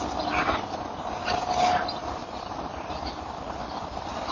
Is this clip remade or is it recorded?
recorded